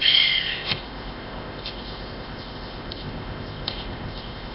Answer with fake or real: fake